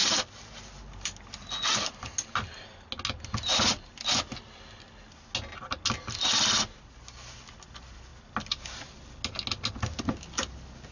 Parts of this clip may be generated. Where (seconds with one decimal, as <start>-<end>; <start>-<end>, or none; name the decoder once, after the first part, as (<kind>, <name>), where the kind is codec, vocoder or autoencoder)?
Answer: none